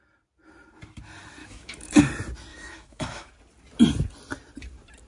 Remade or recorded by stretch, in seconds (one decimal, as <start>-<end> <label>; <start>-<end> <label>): 0.0-1.4 recorded; 1.4-2.0 remade; 2.0-2.5 recorded; 2.5-3.3 remade; 3.3-5.1 recorded